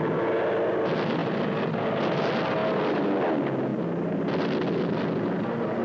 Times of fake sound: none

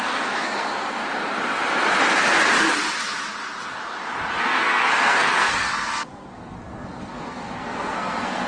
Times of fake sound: 0.0-1.0 (codec, SNAC); 4.4-8.5

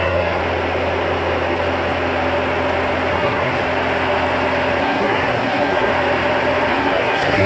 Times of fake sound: 0.0-0.4 (codec, SNAC); 3.1-3.6; 4.8-5.9; 6.7-7.5

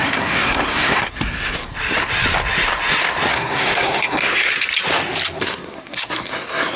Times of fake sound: 0.0-1.7 (codec, SNAC); 3.3-4.5; 5.4-6.8

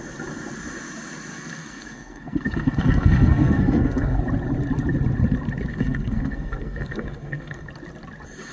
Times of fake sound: 1.3-4.2 (codec, SNAC); 5.7-7.7

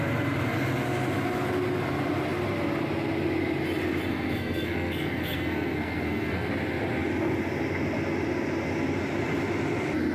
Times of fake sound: 4.1-6.5 (codec, SNAC)

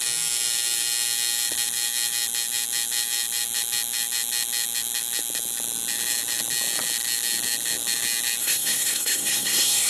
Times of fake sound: 8.4-9.9 (codec, SNAC)